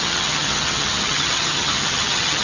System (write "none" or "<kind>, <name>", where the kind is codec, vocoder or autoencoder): vocoder, HiFi-GAN